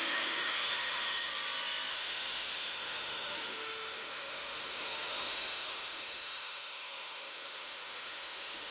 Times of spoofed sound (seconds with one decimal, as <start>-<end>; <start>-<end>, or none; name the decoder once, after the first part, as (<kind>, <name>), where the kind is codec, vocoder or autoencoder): 0.0-1.3 (autoencoder, DAC-VAE); 1.9-8.7